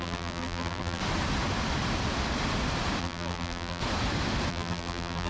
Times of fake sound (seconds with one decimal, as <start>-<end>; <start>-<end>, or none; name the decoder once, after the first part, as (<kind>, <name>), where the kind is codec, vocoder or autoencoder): 0.0-1.0 (vocoder, BigVGAN v2); 3.0-3.8; 4.5-5.3